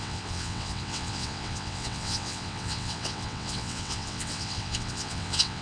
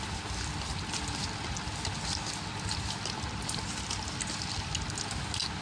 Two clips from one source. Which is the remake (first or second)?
first